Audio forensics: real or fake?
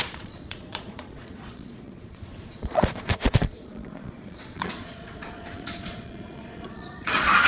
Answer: fake